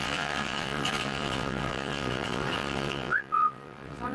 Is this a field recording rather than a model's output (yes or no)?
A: no